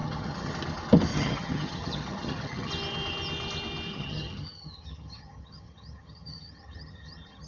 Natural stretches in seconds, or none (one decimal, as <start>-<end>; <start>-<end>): 0.5-1.1; 2.7-3.9